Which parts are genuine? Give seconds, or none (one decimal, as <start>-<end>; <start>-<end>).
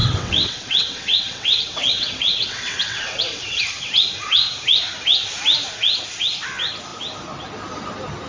3.9-8.3